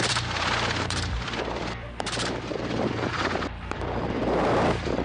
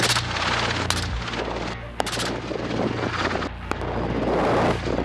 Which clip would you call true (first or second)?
second